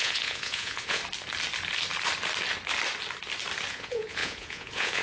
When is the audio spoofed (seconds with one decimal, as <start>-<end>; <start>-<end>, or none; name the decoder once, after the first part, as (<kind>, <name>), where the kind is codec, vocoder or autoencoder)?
0.0-1.0 (vocoder, Vocos); 3.7-5.0